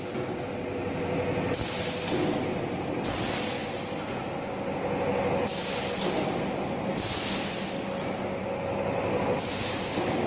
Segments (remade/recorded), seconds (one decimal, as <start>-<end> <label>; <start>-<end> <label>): 0.0-10.3 recorded